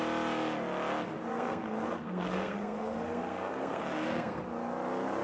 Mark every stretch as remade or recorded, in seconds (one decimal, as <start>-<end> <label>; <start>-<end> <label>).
0.0-1.3 recorded; 1.3-4.4 remade; 4.4-5.2 recorded